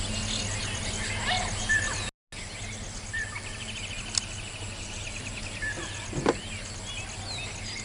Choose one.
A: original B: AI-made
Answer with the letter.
A